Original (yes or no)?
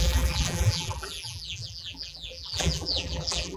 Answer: no